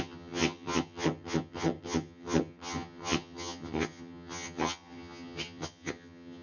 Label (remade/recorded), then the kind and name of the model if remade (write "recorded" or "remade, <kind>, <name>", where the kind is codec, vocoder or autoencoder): remade, vocoder, HiFi-GAN